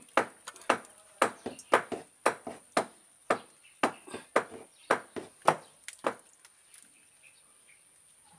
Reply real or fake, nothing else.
real